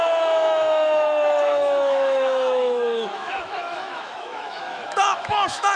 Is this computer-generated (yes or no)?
yes